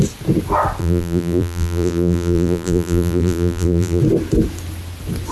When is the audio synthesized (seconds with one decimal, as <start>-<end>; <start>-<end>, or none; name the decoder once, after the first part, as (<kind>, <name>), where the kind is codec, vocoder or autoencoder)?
0.8-4.0 (vocoder, BigVGAN v2)